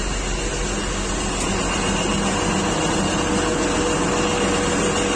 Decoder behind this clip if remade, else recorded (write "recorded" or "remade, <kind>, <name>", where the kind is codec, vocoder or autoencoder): recorded